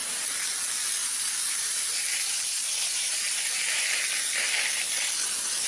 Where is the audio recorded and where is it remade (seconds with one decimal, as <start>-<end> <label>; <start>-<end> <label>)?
0.0-1.0 recorded; 1.0-4.0 remade; 4.0-5.7 recorded

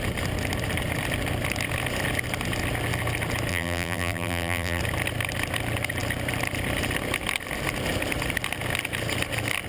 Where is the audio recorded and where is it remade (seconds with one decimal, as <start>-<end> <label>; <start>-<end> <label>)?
0.0-3.5 recorded; 3.5-4.8 remade; 4.8-9.7 recorded

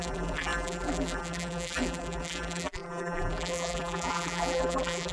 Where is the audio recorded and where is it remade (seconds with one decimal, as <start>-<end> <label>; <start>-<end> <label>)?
0.0-5.1 remade

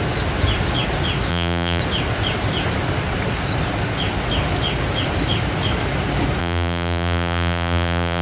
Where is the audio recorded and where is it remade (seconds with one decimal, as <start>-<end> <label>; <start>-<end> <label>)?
0.0-1.3 recorded; 1.3-1.8 remade; 1.8-6.4 recorded; 6.4-8.2 remade

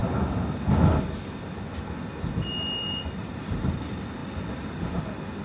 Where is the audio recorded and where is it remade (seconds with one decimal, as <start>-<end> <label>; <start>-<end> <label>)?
0.0-5.4 recorded

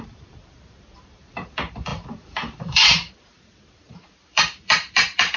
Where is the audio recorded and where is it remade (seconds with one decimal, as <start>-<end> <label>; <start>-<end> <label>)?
0.0-5.4 remade